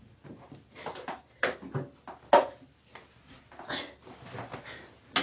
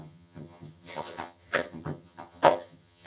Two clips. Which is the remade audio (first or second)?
second